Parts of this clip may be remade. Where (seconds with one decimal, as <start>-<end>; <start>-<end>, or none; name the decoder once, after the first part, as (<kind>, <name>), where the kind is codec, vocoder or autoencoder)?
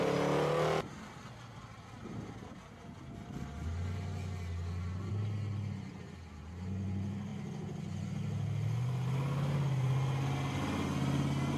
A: none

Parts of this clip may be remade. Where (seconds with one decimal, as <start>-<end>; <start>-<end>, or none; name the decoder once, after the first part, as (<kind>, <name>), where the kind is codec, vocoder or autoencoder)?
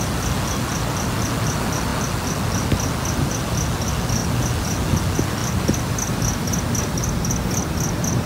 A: none